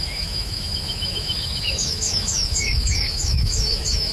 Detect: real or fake fake